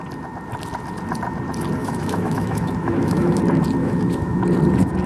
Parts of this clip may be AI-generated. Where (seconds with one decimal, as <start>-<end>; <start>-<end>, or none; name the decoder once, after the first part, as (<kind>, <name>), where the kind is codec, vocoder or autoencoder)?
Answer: 1.8-3.4 (autoencoder, DAC-VAE); 3.8-4.4